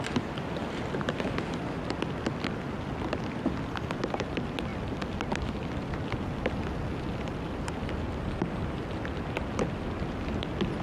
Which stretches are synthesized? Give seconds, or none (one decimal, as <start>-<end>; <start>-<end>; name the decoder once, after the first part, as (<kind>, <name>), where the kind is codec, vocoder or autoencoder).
none

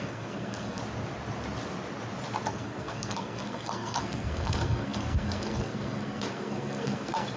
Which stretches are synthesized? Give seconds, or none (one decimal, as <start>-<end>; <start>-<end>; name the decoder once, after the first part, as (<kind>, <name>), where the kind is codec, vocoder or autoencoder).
0.0-0.8 (codec, SNAC); 2.5-7.4

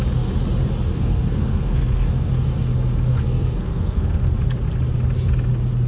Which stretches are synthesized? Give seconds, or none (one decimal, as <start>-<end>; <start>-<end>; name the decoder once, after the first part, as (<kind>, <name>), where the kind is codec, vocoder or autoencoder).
0.9-2.3 (codec, SNAC); 3.1-4.3

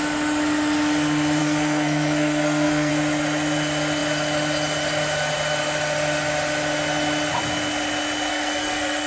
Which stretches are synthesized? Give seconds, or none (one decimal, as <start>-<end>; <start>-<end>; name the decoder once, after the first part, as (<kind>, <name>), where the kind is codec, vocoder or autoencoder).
1.4-2.9 (codec, SNAC); 8.3-9.1